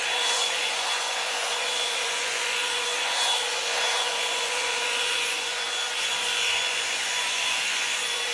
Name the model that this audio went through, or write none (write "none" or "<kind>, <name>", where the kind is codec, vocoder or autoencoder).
vocoder, Vocos